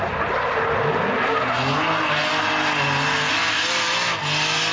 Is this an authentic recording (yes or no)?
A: yes